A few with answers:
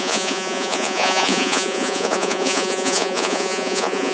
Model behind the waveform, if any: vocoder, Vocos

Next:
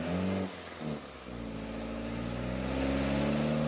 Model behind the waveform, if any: none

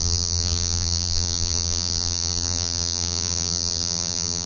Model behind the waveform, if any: vocoder, BigVGAN v2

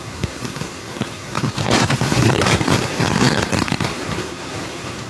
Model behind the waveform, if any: codec, SNAC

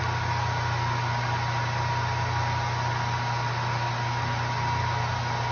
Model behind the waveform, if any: none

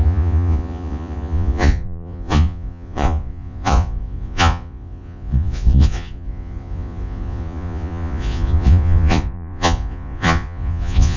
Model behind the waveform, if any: vocoder, Vocos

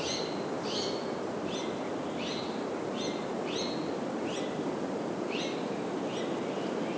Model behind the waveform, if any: none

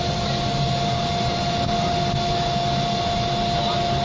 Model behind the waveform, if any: none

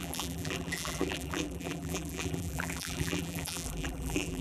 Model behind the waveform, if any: vocoder, BigVGAN v2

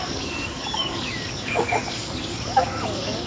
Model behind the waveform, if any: codec, DAC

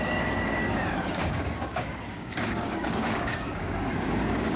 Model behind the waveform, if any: codec, DAC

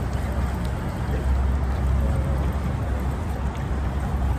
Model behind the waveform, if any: none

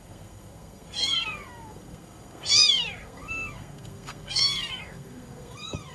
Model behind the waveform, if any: codec, SNAC